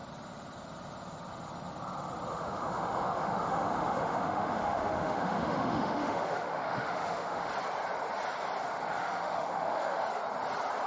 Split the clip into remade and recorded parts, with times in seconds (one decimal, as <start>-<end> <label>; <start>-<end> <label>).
0.0-2.3 recorded; 2.3-7.5 remade; 7.5-9.0 recorded; 9.0-10.0 remade; 10.0-10.9 recorded